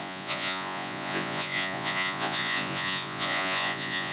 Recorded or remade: remade